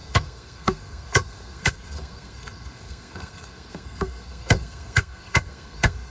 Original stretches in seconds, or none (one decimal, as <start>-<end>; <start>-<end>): none